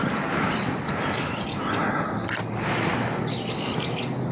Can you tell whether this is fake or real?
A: real